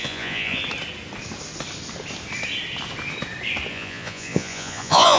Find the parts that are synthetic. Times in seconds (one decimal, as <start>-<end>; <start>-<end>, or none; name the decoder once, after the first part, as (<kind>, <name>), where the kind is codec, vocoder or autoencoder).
0.0-0.6 (vocoder, Vocos); 3.7-5.2